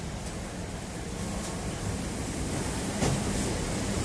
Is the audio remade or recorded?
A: recorded